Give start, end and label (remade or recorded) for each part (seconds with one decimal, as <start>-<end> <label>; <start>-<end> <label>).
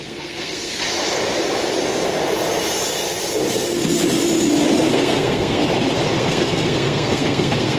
0.0-0.8 remade; 0.8-4.9 recorded; 4.9-5.6 remade; 5.6-6.1 recorded; 6.1-7.8 remade